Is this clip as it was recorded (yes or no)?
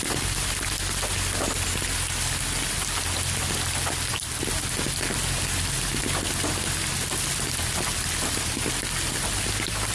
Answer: yes